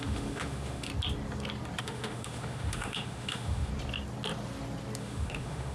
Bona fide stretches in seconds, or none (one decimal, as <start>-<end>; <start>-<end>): 0.9-1.8; 3.7-5.0